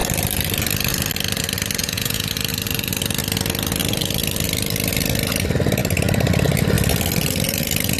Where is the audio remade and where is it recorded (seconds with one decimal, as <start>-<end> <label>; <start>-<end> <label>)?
0.0-1.8 recorded; 1.8-2.3 remade; 2.3-8.0 recorded